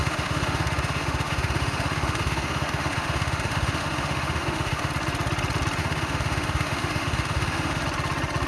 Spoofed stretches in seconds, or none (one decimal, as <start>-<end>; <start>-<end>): 0.0-4.9; 5.8-7.8